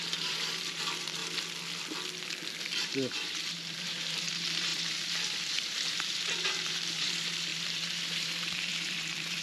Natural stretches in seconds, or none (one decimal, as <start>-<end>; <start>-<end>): 1.2-2.8